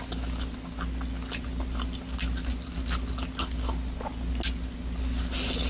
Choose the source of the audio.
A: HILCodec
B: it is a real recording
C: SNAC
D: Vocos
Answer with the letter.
B